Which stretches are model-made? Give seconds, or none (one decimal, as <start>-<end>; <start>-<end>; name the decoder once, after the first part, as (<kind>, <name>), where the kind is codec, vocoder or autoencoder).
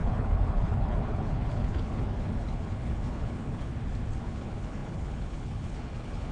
0.0-3.7 (codec, HILCodec); 4.2-6.3